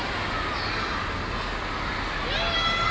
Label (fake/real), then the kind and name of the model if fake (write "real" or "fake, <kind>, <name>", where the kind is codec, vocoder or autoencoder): real